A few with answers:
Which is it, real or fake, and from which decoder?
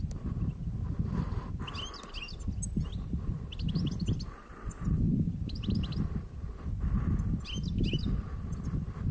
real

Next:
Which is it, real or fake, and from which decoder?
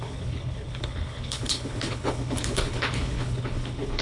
fake, codec, HILCodec